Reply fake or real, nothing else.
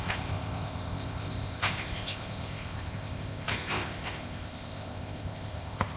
fake